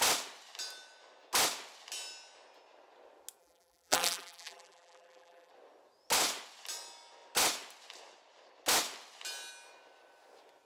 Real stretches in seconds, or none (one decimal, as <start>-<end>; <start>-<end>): 0.0-3.4; 5.5-10.7